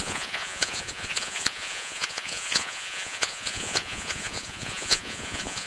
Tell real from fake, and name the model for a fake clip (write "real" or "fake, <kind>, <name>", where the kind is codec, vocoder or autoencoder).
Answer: fake, vocoder, Vocos